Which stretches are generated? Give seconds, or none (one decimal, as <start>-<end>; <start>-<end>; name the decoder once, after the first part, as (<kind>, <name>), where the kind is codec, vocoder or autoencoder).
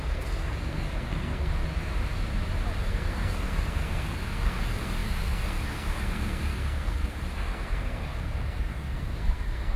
0.0-1.6 (codec, SNAC); 2.8-9.8